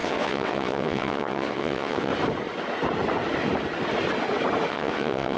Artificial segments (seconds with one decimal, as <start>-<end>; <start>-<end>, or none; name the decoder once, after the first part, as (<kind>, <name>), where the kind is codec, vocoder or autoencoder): 0.0-2.1 (vocoder, WaveNeXt); 4.7-5.4